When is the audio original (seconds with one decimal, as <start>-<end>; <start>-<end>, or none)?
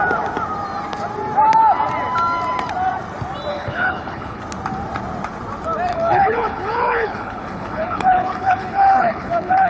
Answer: 0.0-3.5; 4.4-5.9